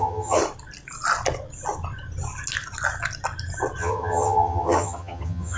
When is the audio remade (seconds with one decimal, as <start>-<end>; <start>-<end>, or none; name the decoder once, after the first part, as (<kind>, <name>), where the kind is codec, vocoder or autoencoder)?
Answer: 0.0-0.4 (vocoder, HiFi-GAN); 3.8-5.6